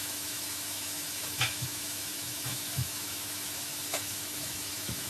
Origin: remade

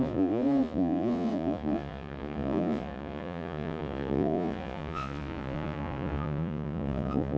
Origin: remade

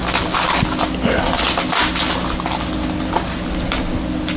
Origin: recorded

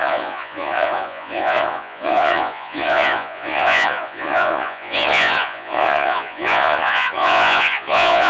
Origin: remade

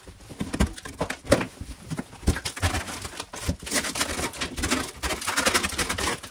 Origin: recorded